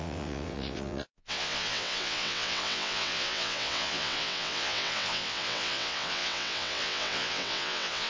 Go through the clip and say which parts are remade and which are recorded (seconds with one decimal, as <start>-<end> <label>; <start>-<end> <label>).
0.0-8.1 remade